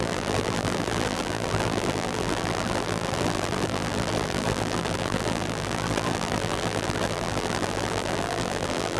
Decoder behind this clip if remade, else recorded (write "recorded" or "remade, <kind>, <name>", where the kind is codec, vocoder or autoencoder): remade, vocoder, BigVGAN v2